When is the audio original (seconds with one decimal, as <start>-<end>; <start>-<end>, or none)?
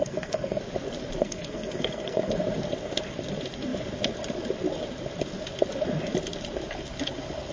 0.6-1.2; 2.3-7.5